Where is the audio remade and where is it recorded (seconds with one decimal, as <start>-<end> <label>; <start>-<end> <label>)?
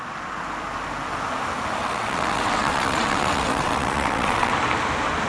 0.0-1.8 recorded; 1.8-4.5 remade; 4.5-5.3 recorded